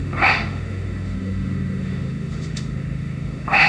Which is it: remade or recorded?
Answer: remade